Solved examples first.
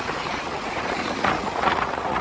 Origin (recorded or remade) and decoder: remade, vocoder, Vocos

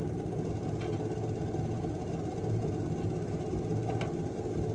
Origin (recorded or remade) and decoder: recorded